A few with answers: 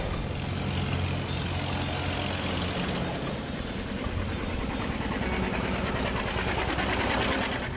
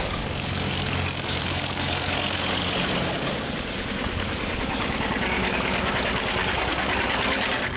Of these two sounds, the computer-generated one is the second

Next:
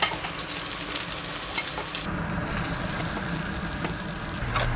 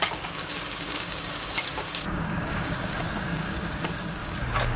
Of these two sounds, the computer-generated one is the second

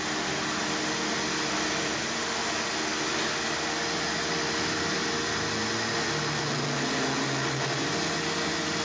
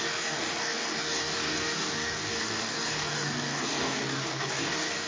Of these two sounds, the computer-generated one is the second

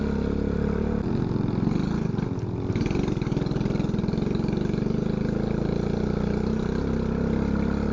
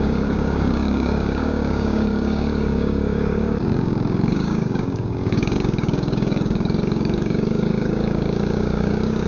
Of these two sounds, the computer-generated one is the second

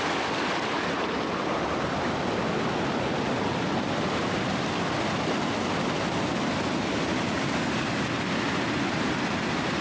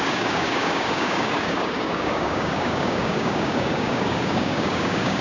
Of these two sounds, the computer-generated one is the second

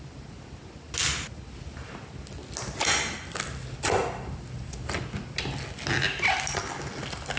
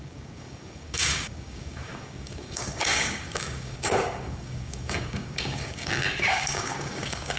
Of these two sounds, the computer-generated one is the second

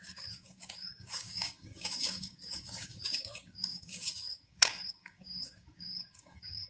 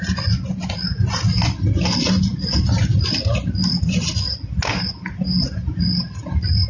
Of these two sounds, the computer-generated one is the first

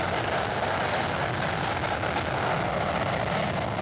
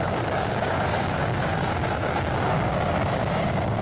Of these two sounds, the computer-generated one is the second